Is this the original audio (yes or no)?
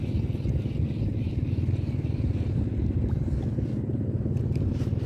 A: yes